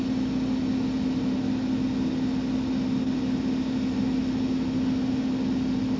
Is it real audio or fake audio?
real